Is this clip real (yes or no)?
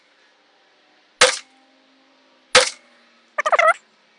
yes